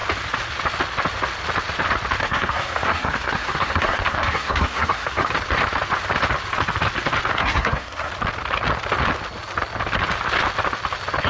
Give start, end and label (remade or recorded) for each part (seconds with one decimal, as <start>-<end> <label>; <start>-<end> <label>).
0.0-2.2 recorded; 2.2-5.3 remade; 5.3-7.3 recorded; 7.3-8.1 remade; 8.1-11.3 recorded